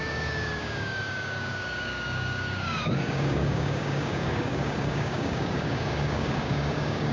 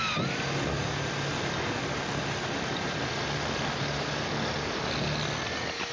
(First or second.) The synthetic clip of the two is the first